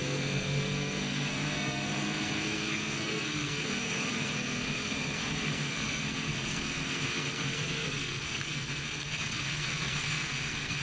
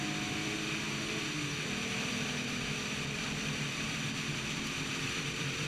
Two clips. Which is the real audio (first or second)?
second